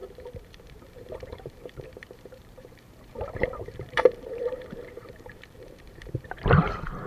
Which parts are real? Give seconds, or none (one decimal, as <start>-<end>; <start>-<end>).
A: none